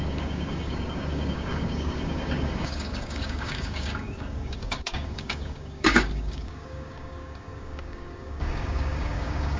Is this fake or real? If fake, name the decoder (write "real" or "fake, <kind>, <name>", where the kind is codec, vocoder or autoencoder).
fake, codec, DAC